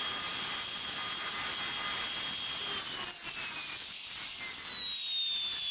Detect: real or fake real